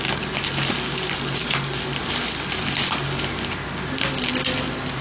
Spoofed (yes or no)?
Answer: no